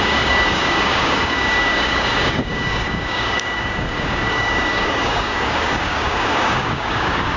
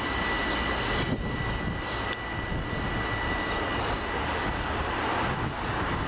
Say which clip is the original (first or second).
second